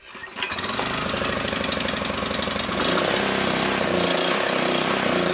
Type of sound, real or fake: real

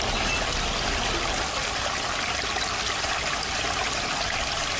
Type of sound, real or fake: real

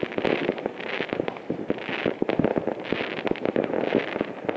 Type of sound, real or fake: real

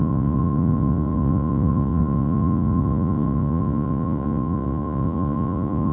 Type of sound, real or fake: fake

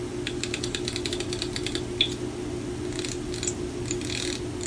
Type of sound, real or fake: real